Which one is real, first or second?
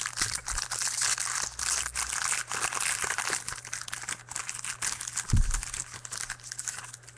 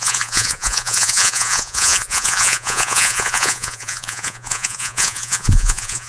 first